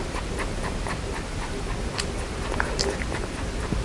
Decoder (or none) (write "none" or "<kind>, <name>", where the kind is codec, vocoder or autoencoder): none